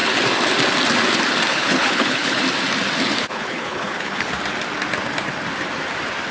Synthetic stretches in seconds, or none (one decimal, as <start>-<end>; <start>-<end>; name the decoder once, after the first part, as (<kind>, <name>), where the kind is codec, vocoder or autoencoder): 1.5-2.4 (codec, HILCodec); 3.2-4.3